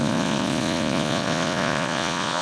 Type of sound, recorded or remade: remade